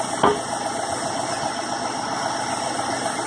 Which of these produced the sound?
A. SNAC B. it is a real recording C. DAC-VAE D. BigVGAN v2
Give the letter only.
B